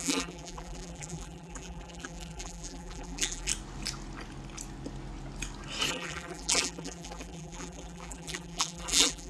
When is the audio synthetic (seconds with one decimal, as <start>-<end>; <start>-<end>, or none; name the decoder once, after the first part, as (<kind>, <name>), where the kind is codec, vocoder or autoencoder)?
0.0-3.5 (vocoder, BigVGAN v2); 5.9-9.3